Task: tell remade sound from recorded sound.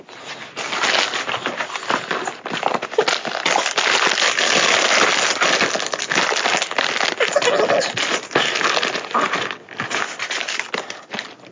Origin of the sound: recorded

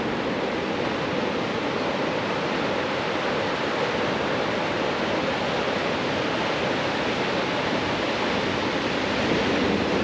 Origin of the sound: recorded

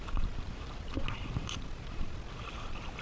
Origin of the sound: recorded